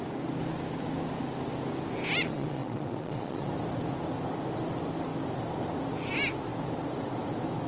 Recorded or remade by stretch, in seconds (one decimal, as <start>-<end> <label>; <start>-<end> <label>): 0.0-2.2 recorded; 2.2-3.5 remade; 3.5-7.7 recorded